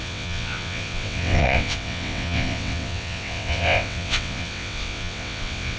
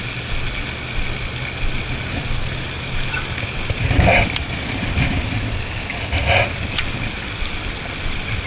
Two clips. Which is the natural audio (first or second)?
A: second